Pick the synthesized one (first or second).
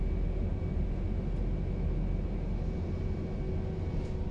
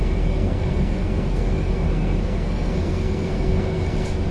second